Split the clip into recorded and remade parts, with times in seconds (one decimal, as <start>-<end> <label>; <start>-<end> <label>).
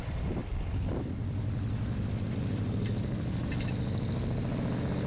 0.0-0.4 recorded; 0.4-3.5 remade; 3.5-5.1 recorded